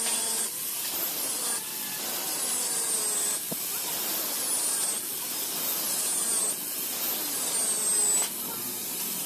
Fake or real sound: real